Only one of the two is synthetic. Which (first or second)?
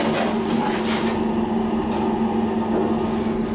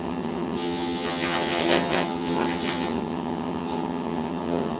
second